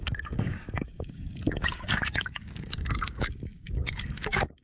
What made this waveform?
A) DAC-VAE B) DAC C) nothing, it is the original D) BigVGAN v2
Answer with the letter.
B